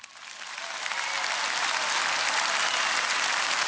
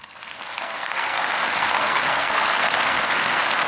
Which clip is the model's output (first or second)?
second